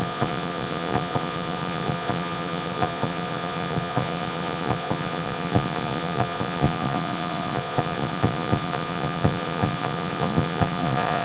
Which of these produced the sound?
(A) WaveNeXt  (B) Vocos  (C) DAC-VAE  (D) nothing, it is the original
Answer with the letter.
B